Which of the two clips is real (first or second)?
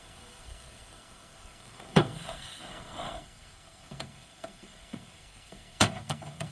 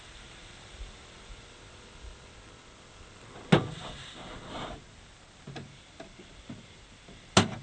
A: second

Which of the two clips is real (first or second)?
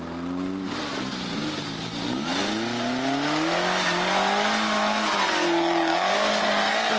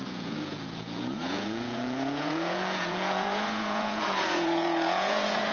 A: first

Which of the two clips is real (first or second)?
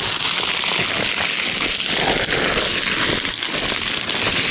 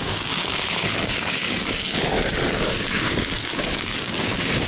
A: first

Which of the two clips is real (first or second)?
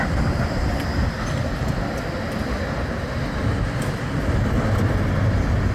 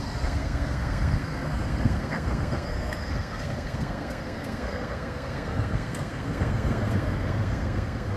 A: first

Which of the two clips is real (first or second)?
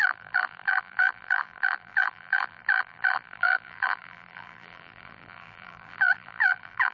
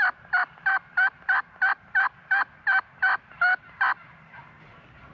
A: second